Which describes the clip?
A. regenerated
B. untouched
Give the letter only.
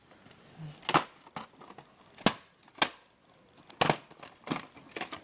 B